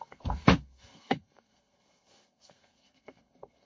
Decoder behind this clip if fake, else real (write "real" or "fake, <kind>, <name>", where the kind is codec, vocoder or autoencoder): fake, codec, SNAC